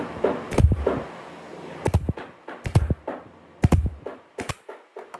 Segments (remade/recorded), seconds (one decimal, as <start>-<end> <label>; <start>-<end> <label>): 0.0-5.2 recorded